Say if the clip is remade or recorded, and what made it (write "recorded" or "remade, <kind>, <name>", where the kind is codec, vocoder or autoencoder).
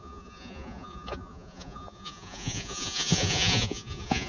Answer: remade, vocoder, Vocos